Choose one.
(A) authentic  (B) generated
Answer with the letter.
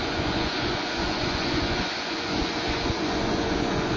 B